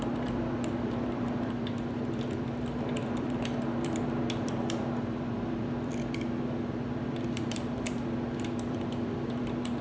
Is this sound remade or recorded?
remade